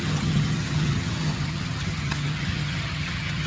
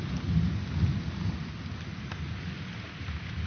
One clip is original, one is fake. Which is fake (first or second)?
first